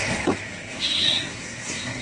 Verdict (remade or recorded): remade